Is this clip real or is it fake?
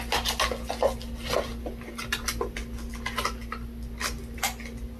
real